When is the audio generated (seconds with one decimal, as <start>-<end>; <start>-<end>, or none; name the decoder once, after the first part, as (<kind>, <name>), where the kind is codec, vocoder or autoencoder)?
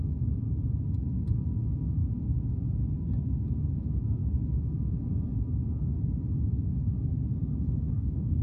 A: 7.5-8.4 (codec, DAC)